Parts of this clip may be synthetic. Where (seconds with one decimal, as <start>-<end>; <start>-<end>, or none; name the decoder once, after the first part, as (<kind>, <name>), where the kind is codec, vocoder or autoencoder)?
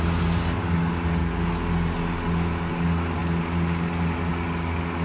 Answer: none